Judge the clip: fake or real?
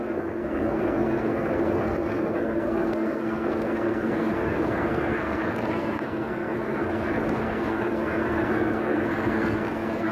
fake